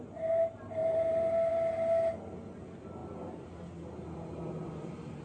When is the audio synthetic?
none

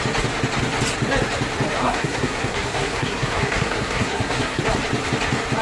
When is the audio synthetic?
1.8-4.6 (codec, SNAC)

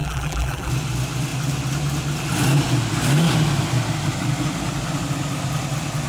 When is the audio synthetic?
0.0-0.7 (vocoder, BigVGAN v2)

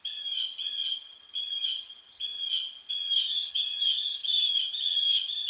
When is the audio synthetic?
0.0-5.5 (vocoder, HiFi-GAN)

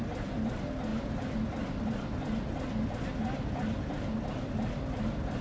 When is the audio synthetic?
none

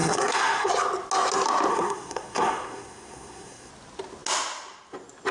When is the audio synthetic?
0.0-0.7 (codec, SNAC); 1.7-3.7

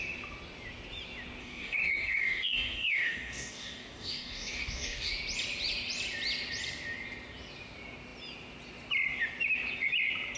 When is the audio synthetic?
1.4-5.1 (codec, DAC)